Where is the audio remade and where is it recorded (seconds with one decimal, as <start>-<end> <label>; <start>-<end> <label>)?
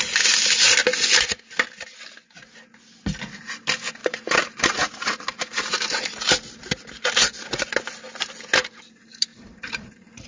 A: 0.0-4.0 recorded; 4.0-6.9 remade; 6.9-9.3 recorded; 9.3-10.3 remade